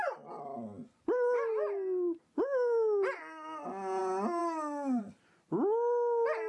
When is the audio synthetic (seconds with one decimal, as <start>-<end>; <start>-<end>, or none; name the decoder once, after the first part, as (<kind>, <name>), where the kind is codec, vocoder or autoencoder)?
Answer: 4.4-5.0 (autoencoder, DAC-VAE)